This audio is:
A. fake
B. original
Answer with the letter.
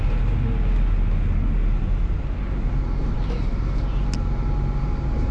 B